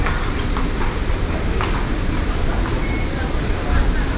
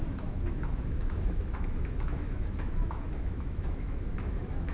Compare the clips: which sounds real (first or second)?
first